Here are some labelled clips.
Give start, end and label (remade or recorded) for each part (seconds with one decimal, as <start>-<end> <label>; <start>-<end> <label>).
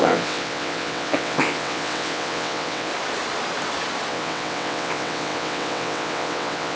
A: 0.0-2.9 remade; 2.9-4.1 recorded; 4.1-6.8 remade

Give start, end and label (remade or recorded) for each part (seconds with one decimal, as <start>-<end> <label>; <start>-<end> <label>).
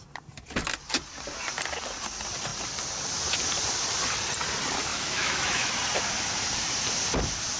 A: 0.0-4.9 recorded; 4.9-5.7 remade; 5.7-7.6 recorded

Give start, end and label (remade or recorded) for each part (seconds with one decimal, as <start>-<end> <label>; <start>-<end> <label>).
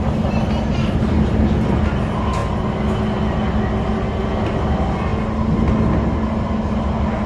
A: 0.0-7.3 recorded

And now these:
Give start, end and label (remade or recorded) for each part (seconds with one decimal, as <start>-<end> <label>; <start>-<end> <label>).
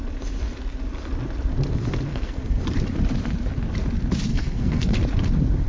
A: 0.0-2.1 recorded; 2.1-2.6 remade; 2.6-4.3 recorded; 4.3-5.0 remade; 5.0-5.7 recorded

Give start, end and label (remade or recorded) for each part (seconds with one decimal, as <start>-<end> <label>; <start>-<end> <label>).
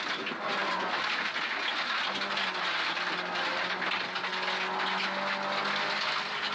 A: 0.0-0.6 recorded; 0.6-1.7 remade; 1.7-6.5 recorded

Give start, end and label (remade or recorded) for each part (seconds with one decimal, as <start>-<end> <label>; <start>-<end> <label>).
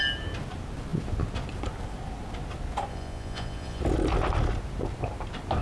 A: 0.0-2.9 recorded; 2.9-3.8 remade; 3.8-5.6 recorded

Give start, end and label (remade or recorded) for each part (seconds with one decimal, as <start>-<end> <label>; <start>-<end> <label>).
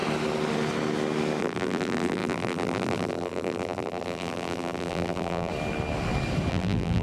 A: 0.0-1.4 recorded; 1.4-5.5 remade; 5.5-6.5 recorded; 6.5-7.0 remade